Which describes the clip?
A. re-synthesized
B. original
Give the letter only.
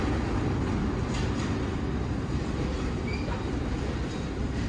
B